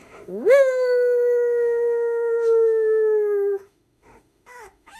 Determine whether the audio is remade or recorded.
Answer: remade